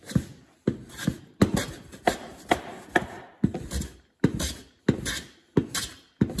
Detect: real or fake real